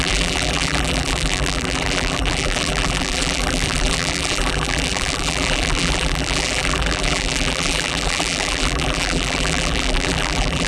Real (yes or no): no